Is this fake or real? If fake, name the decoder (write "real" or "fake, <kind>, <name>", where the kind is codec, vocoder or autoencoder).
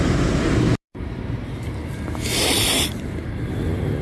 fake, vocoder, BigVGAN v2